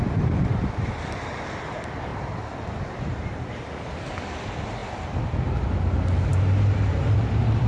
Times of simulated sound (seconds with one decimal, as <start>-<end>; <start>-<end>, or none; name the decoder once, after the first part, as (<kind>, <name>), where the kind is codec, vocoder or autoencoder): 0.0-2.1 (vocoder, BigVGAN v2); 3.2-4.8; 5.5-6.3; 6.9-7.7